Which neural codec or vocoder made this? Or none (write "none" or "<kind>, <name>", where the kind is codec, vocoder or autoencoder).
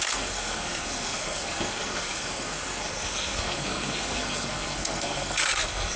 codec, SNAC